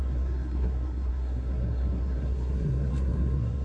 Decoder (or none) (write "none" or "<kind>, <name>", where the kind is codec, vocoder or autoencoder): codec, SNAC